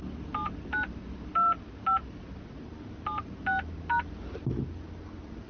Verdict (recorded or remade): recorded